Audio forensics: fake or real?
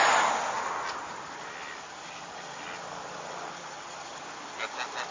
real